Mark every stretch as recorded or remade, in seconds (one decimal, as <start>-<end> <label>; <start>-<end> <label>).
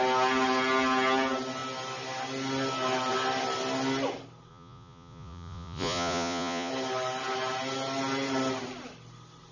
0.0-4.5 recorded; 4.5-6.7 remade; 6.7-9.5 recorded